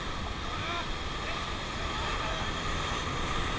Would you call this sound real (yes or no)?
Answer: yes